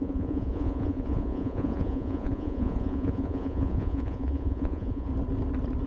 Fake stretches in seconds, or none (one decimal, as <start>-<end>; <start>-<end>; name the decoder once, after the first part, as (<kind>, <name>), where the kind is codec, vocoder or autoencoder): 0.0-5.1 (vocoder, Vocos)